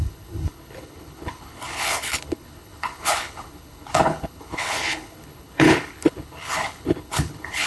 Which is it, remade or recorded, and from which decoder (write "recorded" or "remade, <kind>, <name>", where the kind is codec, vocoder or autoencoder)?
remade, codec, HILCodec